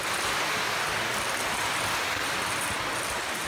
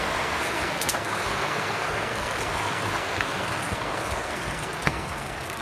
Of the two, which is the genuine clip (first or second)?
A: first